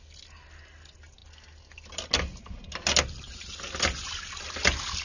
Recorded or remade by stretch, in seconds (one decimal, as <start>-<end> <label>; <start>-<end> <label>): 0.0-5.0 recorded